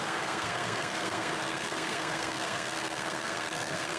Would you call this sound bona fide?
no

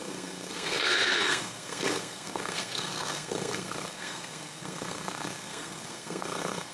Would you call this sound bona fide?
no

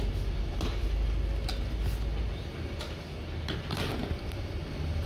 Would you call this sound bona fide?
yes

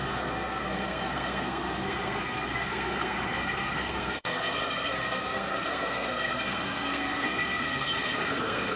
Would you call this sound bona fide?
no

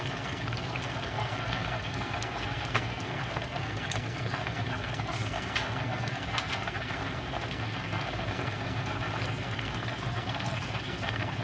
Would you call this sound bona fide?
no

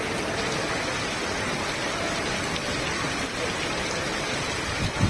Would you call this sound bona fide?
yes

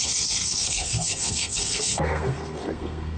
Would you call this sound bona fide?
no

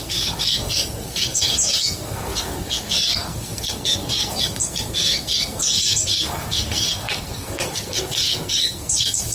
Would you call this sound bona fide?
no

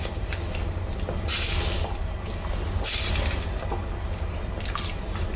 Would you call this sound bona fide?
yes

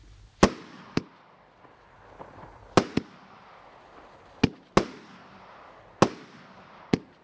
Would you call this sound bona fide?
yes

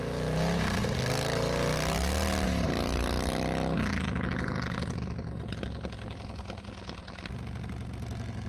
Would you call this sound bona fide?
yes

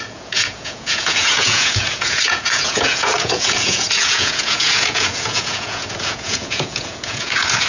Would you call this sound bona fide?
no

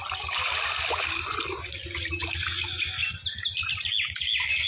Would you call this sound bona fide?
yes